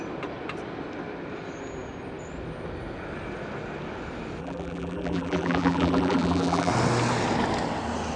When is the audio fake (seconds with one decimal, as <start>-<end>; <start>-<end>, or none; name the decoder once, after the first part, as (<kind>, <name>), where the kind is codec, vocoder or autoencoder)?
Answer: 4.4-6.7 (vocoder, BigVGAN v2)